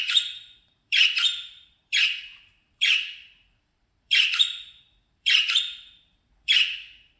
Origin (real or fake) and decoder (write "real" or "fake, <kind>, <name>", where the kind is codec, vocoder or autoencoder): fake, vocoder, BigVGAN v2